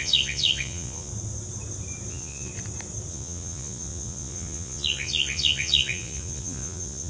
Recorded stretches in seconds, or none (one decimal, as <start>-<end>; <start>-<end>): 1.1-2.1; 2.5-3.1